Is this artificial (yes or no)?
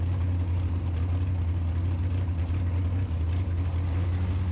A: no